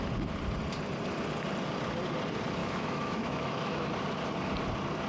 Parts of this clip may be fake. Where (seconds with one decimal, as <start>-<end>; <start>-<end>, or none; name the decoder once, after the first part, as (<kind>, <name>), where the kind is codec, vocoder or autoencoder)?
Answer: 2.6-3.9 (autoencoder, DAC-VAE)